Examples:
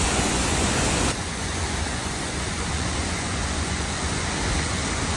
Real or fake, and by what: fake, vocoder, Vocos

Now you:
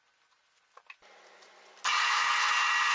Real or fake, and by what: real